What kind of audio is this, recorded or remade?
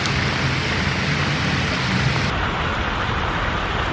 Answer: recorded